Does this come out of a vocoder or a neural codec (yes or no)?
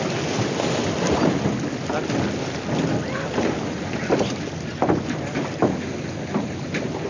no